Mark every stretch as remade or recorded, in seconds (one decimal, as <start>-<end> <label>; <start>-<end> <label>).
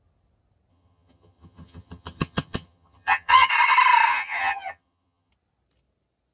0.0-0.7 recorded; 0.7-3.5 remade; 3.5-4.1 recorded; 4.1-5.3 remade; 5.3-6.3 recorded